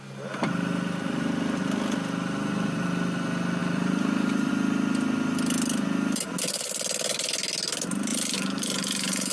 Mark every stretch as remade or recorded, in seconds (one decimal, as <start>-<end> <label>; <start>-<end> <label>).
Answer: 0.0-3.6 recorded; 3.6-4.5 remade; 4.5-8.1 recorded; 8.1-9.3 remade